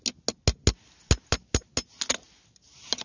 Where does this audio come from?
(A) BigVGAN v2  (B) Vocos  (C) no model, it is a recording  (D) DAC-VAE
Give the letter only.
C